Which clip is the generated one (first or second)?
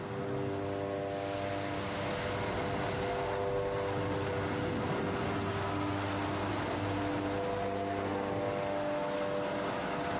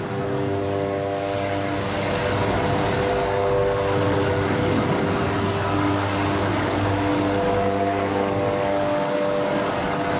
second